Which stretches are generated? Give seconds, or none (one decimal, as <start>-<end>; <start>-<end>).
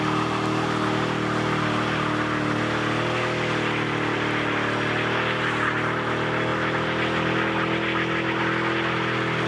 none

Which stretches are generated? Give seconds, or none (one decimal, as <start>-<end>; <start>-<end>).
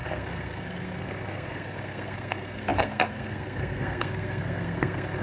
0.0-5.2